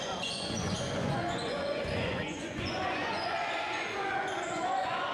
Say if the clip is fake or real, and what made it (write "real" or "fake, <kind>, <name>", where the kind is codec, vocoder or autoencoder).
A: fake, vocoder, Vocos